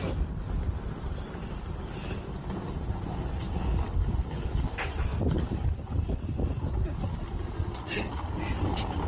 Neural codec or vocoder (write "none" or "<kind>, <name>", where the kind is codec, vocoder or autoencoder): none